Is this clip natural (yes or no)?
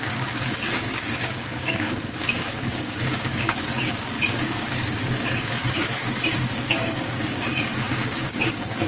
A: no